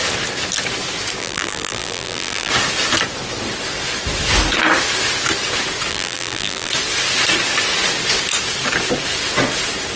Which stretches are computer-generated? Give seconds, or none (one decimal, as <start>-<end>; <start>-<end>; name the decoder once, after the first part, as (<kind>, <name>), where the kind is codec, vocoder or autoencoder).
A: 1.2-2.5 (vocoder, BigVGAN v2); 5.9-6.7